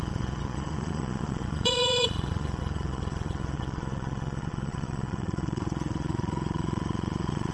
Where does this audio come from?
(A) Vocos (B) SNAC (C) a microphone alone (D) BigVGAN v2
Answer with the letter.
A